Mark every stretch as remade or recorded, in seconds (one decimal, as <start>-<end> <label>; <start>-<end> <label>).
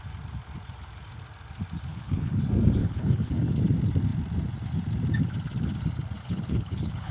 0.0-1.9 recorded; 1.9-2.4 remade; 2.4-2.8 recorded; 2.8-3.6 remade; 3.6-6.2 recorded; 6.2-7.1 remade